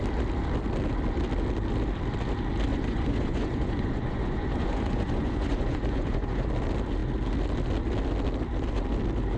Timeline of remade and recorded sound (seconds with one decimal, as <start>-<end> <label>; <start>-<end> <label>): 0.0-2.7 recorded; 2.7-6.5 remade; 6.5-9.4 recorded